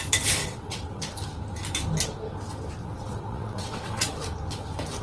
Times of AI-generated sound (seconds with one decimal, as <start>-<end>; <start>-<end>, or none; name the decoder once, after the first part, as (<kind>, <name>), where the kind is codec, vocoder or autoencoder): 0.4-1.0 (vocoder, WaveNeXt); 2.8-4.2